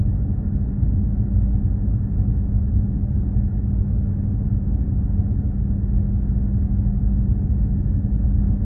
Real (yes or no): yes